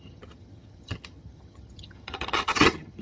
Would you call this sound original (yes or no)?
no